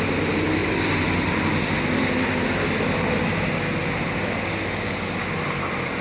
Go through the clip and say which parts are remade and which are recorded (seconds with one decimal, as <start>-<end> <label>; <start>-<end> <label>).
0.0-6.0 recorded